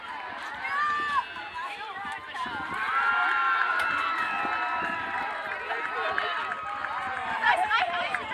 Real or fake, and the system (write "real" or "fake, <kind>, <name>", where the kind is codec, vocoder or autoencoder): real